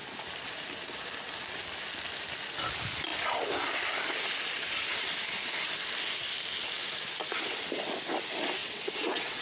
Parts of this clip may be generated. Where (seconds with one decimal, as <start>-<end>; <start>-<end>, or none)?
8.6-9.4